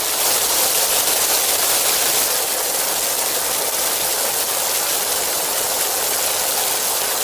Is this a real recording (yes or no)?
yes